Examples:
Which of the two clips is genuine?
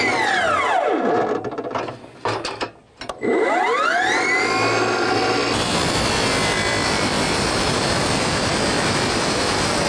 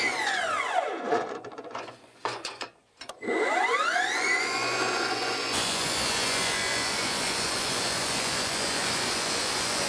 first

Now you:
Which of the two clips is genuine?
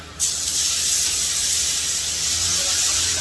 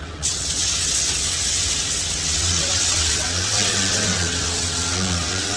first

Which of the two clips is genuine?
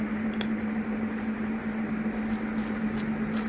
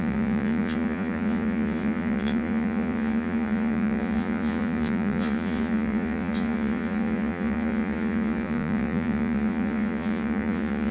first